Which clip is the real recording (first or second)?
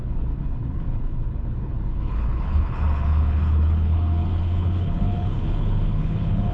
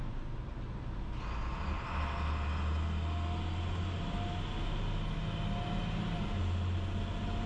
second